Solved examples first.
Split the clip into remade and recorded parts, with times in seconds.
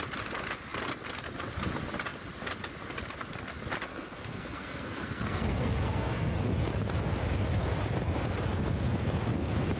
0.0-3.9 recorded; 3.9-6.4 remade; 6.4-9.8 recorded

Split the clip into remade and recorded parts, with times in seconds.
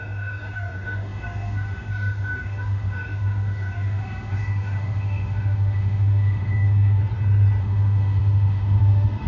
0.0-7.0 remade; 7.0-7.6 recorded; 7.6-9.3 remade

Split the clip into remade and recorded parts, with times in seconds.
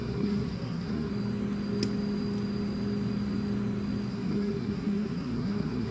0.0-1.1 remade; 1.1-4.1 recorded; 4.1-5.9 remade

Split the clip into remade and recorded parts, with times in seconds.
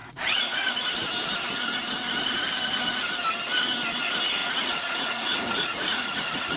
0.0-0.9 remade; 0.9-4.4 recorded; 4.4-6.6 remade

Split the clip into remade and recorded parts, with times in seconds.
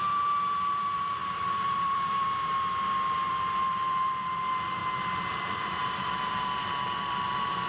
0.0-4.8 remade; 4.8-5.4 recorded; 5.4-7.7 remade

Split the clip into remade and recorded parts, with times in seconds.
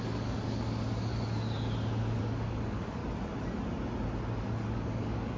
0.0-1.1 remade; 1.1-2.2 recorded; 2.2-3.0 remade; 3.0-4.4 recorded; 4.4-5.4 remade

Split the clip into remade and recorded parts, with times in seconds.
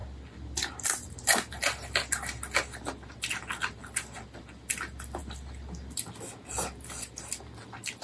0.0-8.0 recorded